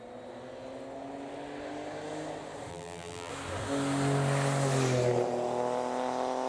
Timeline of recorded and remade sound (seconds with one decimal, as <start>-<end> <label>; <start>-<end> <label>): 0.0-2.7 recorded; 2.7-3.3 remade; 3.3-6.5 recorded